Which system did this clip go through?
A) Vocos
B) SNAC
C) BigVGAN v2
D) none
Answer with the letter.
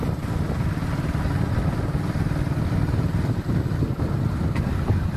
D